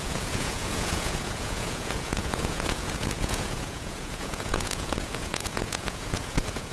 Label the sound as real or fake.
fake